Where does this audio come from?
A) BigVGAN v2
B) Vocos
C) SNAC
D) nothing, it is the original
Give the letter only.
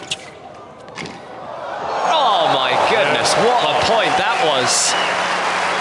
D